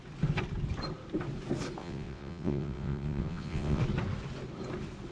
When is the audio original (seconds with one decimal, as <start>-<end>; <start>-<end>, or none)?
0.0-1.8; 3.8-5.1